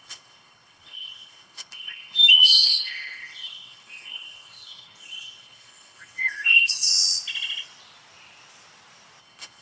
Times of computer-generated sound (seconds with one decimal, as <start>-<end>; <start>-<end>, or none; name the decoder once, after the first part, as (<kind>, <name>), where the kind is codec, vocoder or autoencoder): 0.0-6.9 (codec, HILCodec); 9.2-9.6